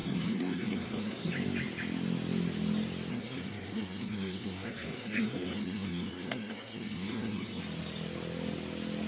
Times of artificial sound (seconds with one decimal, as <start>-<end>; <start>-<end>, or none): 0.0-1.3; 3.1-7.6